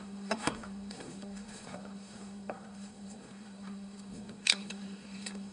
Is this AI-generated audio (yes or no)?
yes